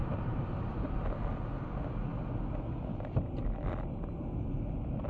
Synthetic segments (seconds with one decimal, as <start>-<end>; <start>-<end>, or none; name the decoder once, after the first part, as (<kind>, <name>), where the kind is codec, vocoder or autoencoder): 0.0-1.2 (vocoder, BigVGAN v2)